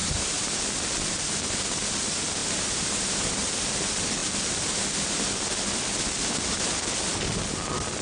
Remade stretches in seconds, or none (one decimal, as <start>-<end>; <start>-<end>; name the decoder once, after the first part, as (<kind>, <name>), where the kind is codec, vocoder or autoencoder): 0.0-0.6 (vocoder, BigVGAN v2); 2.4-3.3